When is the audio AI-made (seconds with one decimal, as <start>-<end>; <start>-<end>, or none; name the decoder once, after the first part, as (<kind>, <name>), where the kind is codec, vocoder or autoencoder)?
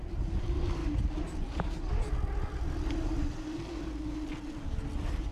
none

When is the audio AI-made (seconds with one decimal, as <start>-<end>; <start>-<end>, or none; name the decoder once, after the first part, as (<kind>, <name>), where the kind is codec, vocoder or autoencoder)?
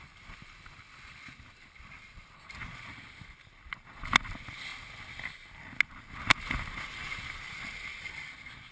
none